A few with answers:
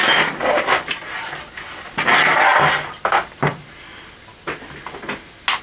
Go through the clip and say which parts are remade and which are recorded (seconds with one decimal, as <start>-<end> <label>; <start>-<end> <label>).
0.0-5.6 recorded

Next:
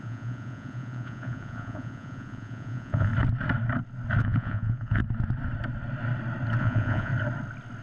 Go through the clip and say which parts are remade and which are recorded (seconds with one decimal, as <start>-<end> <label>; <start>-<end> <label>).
0.0-3.1 remade; 3.1-4.2 recorded; 4.2-5.0 remade; 5.0-6.6 recorded; 6.6-7.1 remade; 7.1-7.8 recorded

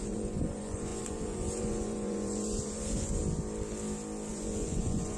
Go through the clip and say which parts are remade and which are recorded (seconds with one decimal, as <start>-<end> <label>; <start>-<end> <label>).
0.0-3.2 remade; 3.2-4.3 recorded; 4.3-5.2 remade